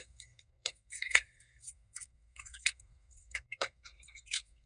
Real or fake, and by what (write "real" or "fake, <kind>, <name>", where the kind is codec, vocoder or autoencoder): fake, codec, SNAC